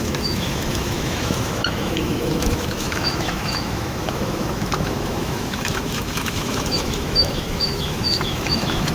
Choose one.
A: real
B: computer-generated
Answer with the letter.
B